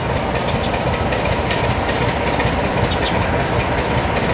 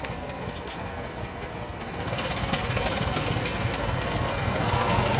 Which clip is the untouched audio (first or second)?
first